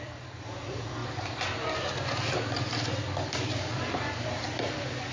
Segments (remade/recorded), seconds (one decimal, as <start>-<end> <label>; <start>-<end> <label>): 0.0-1.0 remade; 1.0-3.0 recorded; 3.0-5.1 remade